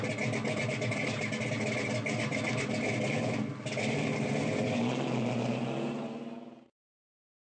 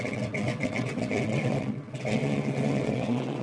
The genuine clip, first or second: first